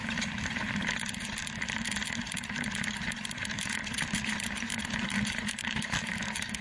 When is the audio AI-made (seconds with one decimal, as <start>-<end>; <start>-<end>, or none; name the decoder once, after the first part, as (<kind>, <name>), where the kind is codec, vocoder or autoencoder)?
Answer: 0.0-6.6 (vocoder, BigVGAN v2)